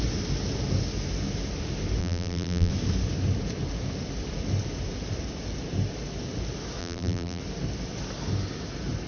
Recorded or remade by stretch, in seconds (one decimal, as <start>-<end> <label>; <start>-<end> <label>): 0.0-2.0 recorded; 2.0-2.7 remade; 2.7-6.8 recorded; 6.8-7.4 remade; 7.4-9.1 recorded